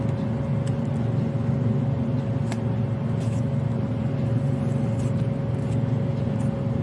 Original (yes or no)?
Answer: yes